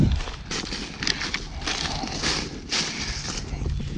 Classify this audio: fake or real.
real